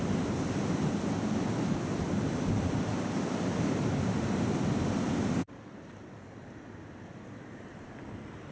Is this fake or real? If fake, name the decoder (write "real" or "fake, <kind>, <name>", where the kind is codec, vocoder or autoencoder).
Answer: real